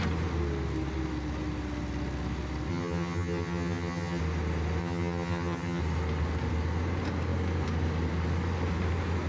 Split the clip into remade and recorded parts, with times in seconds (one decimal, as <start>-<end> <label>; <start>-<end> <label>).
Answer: 0.0-2.7 recorded; 2.7-4.2 remade; 4.2-4.8 recorded; 4.8-5.8 remade; 5.8-9.3 recorded